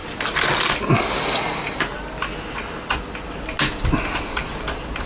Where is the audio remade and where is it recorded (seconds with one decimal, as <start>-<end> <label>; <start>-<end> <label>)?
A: 0.0-1.9 remade; 1.9-3.7 recorded; 3.7-5.1 remade